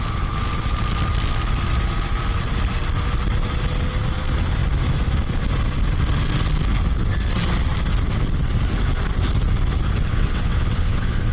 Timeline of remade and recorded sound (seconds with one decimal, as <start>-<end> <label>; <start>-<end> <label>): 0.0-10.1 recorded; 10.1-11.3 remade